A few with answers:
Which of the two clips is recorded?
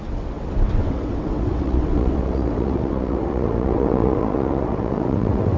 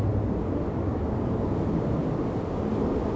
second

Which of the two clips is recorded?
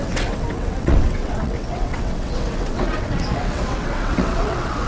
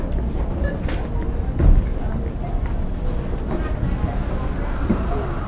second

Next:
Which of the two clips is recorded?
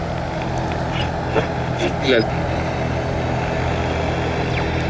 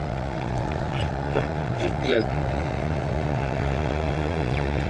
first